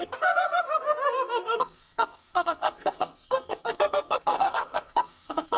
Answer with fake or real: fake